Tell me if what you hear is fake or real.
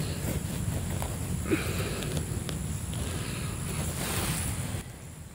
real